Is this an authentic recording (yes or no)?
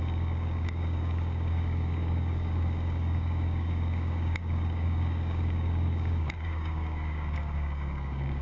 no